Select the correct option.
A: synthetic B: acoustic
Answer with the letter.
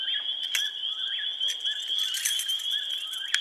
B